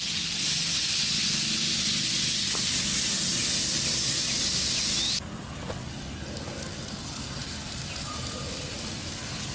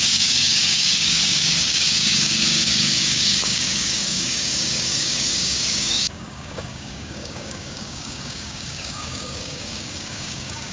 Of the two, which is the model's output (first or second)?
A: second